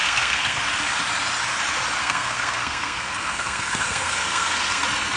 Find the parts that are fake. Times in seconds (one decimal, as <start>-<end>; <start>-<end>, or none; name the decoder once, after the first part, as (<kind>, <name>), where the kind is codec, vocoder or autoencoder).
0.0-0.6 (codec, SNAC); 2.0-4.8